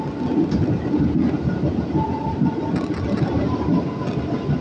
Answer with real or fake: real